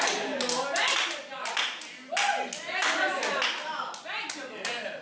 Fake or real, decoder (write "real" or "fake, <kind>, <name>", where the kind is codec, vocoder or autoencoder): real